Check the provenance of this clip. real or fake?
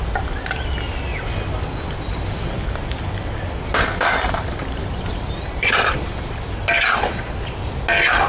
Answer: real